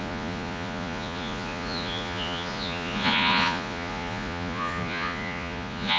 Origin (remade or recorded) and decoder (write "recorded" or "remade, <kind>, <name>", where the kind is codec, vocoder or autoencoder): remade, vocoder, Vocos